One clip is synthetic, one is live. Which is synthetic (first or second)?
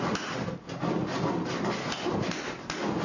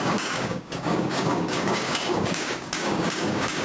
second